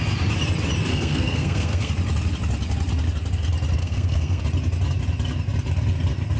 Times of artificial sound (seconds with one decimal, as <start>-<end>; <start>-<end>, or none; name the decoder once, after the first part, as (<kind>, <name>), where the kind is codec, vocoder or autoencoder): 0.9-1.9 (codec, SNAC); 3.8-4.4